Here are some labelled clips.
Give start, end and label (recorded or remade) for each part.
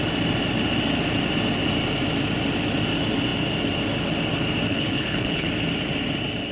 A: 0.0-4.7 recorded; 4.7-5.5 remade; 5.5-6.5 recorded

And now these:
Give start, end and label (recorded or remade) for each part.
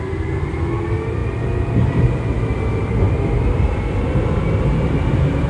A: 0.0-5.5 recorded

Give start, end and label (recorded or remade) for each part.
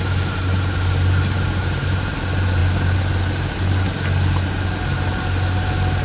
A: 0.0-6.0 recorded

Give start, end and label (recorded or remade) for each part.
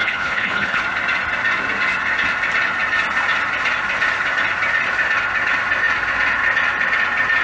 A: 0.0-0.8 remade; 0.8-7.4 recorded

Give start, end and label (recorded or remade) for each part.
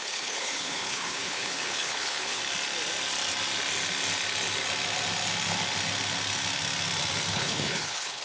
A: 0.0-2.4 remade; 2.4-7.3 recorded; 7.3-8.2 remade